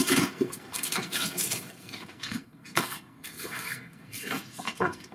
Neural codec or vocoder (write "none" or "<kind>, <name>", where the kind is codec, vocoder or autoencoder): codec, SNAC